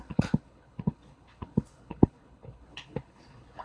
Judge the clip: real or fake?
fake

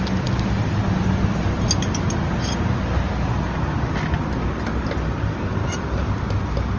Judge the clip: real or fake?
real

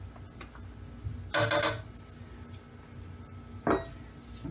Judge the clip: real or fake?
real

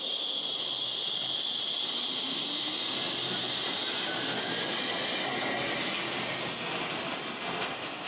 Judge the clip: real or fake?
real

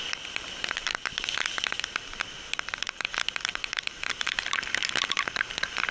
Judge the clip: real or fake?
fake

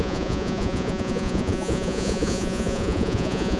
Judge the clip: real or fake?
fake